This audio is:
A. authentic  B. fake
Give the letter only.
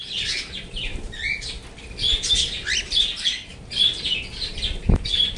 A